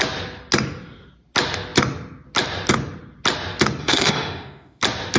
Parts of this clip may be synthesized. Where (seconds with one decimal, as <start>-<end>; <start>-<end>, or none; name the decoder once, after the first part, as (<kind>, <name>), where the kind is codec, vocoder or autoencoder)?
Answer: 3.8-4.8 (autoencoder, DAC-VAE)